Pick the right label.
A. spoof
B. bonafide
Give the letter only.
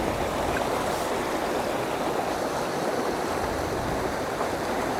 B